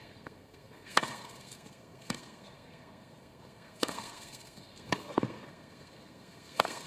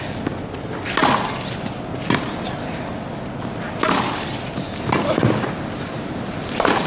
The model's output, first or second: first